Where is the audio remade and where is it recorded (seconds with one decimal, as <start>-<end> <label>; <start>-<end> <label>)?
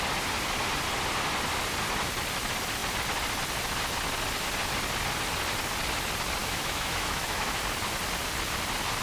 0.0-6.4 recorded; 6.4-7.6 remade; 7.6-9.0 recorded